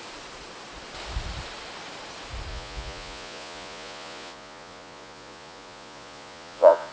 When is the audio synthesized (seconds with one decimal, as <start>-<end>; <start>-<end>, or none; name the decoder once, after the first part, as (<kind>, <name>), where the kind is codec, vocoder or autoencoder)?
2.5-6.9 (vocoder, Vocos)